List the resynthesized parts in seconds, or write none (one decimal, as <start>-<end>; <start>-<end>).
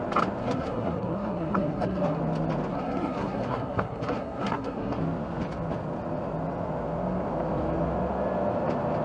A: 0.4-2.2; 2.7-5.0